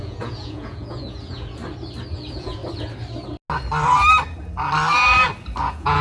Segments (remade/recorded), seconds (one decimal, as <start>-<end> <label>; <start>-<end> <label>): 0.0-1.6 remade; 1.6-2.1 recorded; 2.1-2.6 remade; 2.6-5.6 recorded; 5.6-6.0 remade